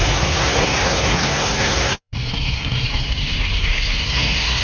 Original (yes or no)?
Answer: no